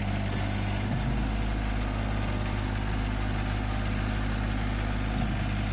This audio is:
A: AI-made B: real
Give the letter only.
B